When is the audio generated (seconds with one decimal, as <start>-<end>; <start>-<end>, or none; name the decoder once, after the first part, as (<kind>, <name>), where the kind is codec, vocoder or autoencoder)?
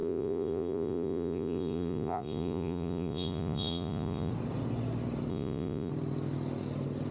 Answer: 0.0-4.3 (vocoder, Vocos); 5.3-5.9